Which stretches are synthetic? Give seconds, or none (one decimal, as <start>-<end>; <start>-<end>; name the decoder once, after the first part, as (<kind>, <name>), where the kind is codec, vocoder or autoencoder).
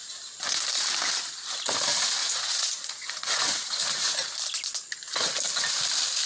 2.2-3.8 (vocoder, Vocos)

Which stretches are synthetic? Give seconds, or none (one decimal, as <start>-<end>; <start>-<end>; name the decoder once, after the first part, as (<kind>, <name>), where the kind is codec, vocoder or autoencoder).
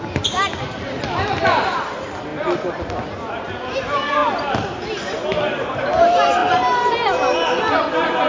none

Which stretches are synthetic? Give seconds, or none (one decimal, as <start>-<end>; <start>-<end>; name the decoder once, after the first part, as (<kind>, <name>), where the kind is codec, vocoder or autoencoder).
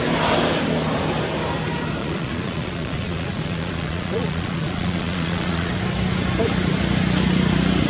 2.0-5.7 (vocoder, Vocos)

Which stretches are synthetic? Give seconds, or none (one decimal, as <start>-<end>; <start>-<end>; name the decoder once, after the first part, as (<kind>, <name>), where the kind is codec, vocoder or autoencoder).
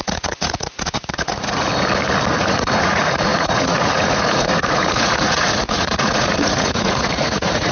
0.0-1.7 (vocoder, Vocos); 2.4-7.7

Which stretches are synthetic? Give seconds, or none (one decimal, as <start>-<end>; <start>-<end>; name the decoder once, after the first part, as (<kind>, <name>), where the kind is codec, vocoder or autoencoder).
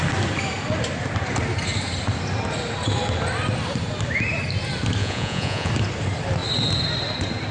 5.0-5.7 (vocoder, Vocos)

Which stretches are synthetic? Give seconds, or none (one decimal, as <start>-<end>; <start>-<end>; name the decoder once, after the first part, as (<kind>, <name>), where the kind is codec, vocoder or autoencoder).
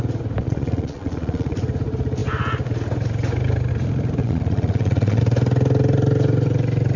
0.4-1.6 (vocoder, Vocos); 4.2-5.2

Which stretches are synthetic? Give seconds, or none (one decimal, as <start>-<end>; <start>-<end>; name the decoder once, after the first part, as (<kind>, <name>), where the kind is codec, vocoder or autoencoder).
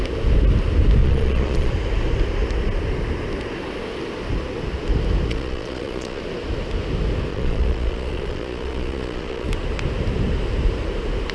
1.0-1.7 (vocoder, Vocos); 5.3-6.2; 7.3-9.5